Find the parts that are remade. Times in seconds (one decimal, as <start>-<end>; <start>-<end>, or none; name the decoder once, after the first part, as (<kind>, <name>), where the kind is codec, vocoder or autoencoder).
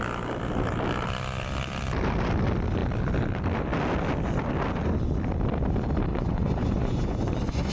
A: 6.1-7.7 (vocoder, Vocos)